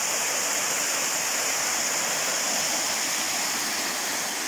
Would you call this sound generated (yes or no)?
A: no